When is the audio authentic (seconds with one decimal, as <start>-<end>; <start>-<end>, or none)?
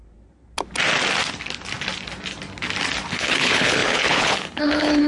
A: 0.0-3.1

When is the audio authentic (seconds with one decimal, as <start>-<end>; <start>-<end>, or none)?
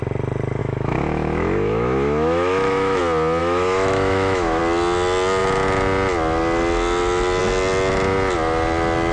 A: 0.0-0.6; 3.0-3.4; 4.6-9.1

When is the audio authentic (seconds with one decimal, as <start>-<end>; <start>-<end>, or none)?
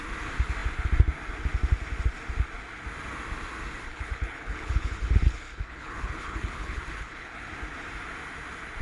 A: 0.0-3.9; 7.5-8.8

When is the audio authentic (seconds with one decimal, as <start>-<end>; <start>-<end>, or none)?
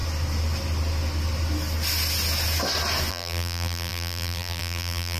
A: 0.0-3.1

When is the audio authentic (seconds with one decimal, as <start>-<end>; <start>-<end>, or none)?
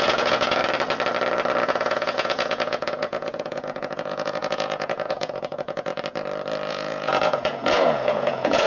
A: 0.6-1.6; 5.9-6.7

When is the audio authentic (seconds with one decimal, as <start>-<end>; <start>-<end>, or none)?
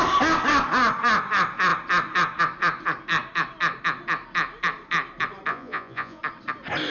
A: 0.0-5.5; 6.2-6.9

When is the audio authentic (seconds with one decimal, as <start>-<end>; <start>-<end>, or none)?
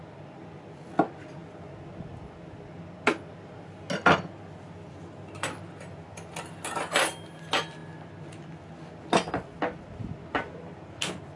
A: 0.0-11.4